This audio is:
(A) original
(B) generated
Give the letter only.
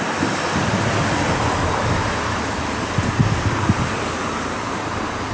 A